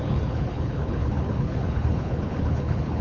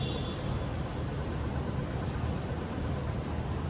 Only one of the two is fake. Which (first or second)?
first